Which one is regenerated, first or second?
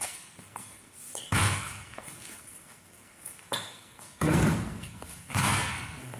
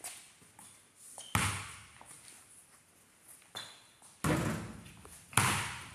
first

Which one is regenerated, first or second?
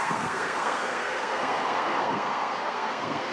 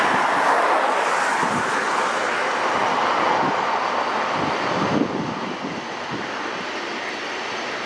first